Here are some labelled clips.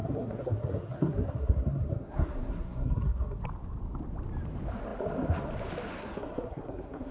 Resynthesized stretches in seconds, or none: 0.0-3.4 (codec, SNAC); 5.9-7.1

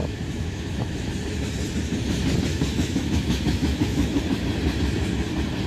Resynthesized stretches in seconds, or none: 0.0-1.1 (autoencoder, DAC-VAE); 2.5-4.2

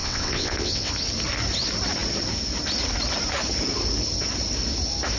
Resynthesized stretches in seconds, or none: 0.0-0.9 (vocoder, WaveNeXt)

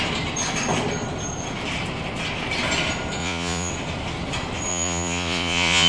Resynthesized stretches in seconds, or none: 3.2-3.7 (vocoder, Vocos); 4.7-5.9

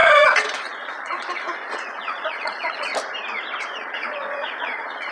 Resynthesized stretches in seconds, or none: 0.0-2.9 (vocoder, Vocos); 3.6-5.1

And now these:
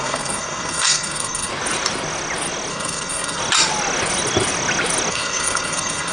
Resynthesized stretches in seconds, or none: 0.0-1.5 (codec, SNAC); 2.7-3.4; 5.1-6.1